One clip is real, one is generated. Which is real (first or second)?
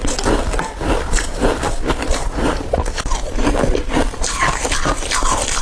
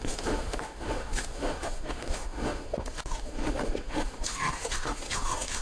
first